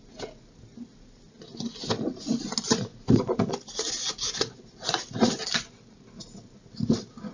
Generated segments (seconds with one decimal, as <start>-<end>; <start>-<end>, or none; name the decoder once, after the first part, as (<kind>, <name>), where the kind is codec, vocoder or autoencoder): 2.9-3.5 (vocoder, BigVGAN v2)